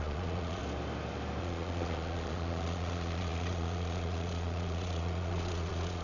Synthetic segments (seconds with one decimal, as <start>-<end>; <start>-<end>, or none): 0.0-0.6; 1.4-6.0